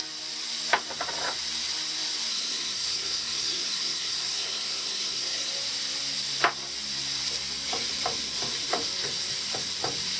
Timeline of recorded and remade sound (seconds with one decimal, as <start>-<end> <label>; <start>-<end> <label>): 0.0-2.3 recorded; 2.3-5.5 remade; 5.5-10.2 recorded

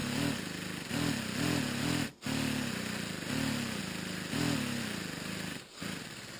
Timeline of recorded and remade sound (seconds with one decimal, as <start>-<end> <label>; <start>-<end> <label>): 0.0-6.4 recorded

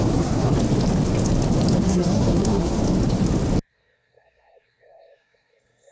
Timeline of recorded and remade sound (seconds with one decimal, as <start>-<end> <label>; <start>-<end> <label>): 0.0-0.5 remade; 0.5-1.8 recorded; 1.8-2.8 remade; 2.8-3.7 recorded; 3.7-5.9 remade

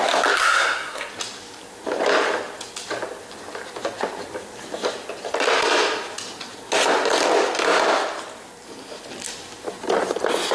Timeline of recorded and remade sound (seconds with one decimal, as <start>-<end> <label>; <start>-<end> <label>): 0.0-0.4 recorded; 0.4-1.1 remade; 1.1-10.5 recorded